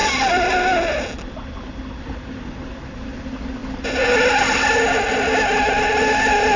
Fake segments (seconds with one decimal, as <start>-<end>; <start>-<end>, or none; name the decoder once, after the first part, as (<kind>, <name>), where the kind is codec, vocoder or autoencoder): none